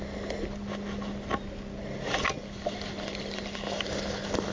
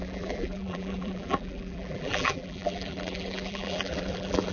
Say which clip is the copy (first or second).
second